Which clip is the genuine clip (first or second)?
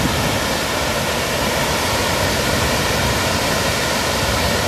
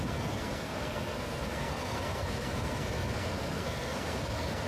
first